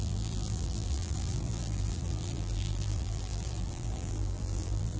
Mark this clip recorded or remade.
remade